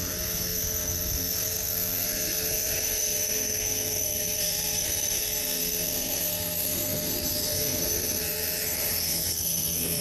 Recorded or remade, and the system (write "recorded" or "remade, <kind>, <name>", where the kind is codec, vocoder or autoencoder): remade, codec, SNAC